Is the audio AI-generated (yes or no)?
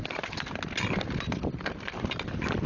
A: no